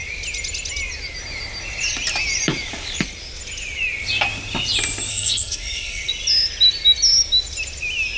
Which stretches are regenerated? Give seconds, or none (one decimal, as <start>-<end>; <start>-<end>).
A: 5.1-6.1